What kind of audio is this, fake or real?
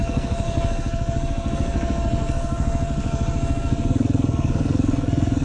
fake